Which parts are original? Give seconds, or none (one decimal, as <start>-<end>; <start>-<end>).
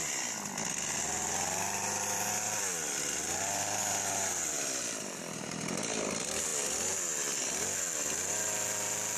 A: 0.0-9.2